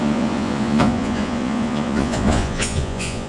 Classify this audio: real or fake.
fake